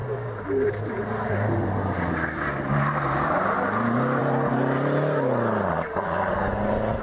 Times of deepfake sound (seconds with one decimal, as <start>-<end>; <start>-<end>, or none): none